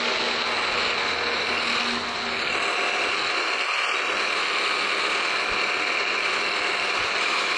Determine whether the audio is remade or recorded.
recorded